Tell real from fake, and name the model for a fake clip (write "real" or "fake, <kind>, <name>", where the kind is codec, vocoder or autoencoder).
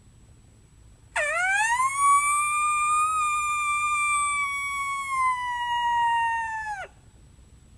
real